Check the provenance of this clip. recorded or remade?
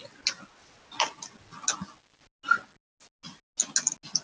recorded